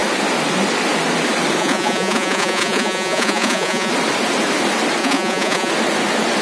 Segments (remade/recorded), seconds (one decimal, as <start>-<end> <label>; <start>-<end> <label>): 0.0-1.6 recorded; 1.6-3.9 remade; 3.9-5.0 recorded; 5.0-5.7 remade; 5.7-6.4 recorded